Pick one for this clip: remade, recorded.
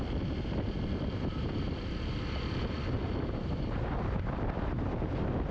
recorded